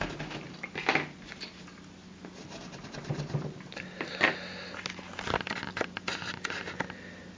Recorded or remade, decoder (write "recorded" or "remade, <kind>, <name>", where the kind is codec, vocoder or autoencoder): recorded